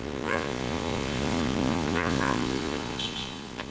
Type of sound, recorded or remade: remade